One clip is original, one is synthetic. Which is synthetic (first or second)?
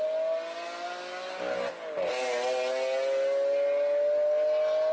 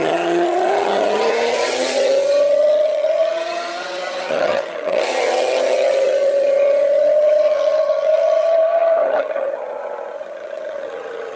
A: second